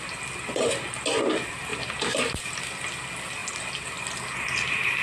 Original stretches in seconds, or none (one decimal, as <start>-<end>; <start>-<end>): 0.0-5.0